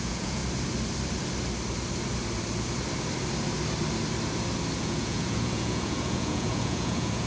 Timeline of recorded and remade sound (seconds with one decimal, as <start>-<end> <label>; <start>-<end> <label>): 0.0-0.4 remade; 0.4-4.8 recorded; 4.8-7.3 remade